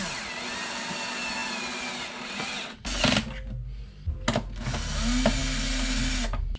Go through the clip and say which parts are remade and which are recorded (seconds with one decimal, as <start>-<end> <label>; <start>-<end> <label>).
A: 0.0-6.6 recorded